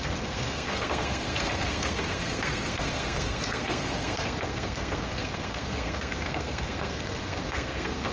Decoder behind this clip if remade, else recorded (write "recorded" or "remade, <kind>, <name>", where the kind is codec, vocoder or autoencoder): remade, codec, SNAC